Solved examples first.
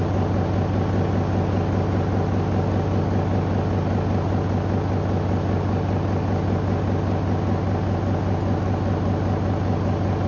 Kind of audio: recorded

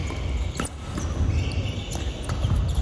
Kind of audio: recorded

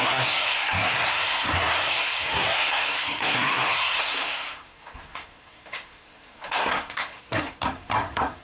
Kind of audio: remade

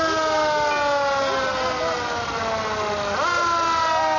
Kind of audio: recorded